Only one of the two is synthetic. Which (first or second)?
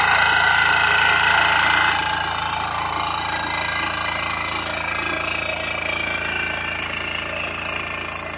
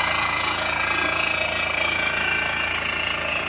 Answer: second